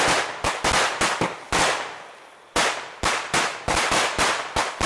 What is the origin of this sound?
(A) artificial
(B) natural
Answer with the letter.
B